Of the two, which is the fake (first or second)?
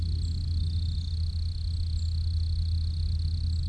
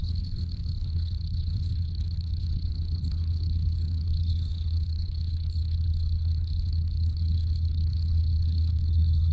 second